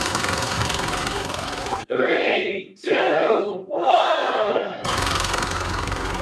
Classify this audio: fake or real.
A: fake